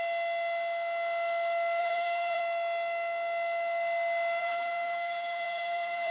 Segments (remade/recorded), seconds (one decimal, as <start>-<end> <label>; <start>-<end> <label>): 0.0-1.8 recorded; 1.8-2.4 remade; 2.4-4.4 recorded; 4.4-6.1 remade